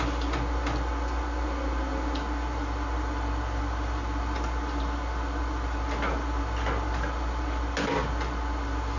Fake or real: real